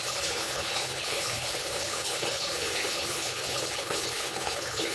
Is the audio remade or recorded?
remade